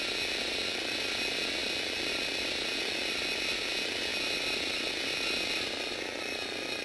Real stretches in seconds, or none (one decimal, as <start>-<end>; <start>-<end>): 0.0-6.8